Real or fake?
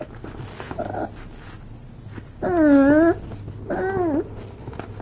real